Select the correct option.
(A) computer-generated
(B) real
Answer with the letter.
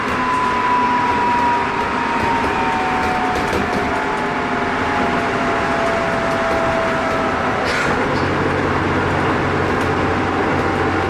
B